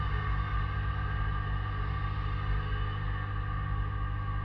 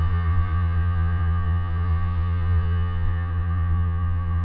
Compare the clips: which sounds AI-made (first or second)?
second